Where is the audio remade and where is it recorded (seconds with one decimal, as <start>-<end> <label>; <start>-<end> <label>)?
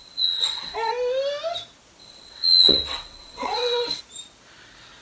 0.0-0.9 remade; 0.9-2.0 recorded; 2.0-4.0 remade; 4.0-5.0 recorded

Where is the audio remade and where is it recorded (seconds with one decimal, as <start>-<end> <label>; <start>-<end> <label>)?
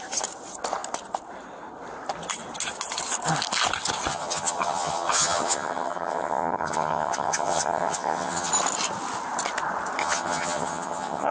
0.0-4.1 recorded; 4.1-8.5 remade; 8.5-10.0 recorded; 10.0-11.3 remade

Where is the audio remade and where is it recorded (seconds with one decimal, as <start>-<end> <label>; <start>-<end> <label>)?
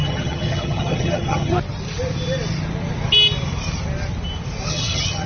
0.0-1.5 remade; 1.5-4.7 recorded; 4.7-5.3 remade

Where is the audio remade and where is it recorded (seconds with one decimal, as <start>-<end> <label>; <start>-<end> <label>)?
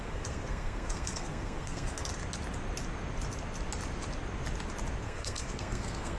0.0-2.1 remade; 2.1-5.0 recorded; 5.0-6.2 remade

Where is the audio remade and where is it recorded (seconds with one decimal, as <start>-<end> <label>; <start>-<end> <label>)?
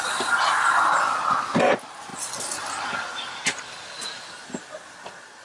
0.0-5.4 recorded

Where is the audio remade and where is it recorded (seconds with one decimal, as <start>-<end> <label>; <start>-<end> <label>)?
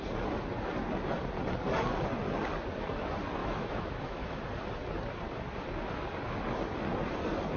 0.0-3.4 recorded; 3.4-4.4 remade; 4.4-7.6 recorded